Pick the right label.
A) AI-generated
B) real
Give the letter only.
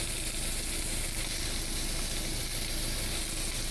B